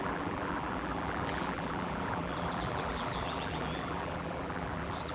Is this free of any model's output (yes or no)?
no